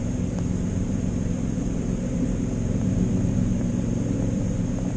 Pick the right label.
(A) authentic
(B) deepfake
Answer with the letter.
B